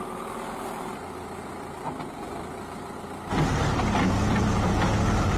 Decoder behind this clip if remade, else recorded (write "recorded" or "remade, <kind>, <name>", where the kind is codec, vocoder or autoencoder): recorded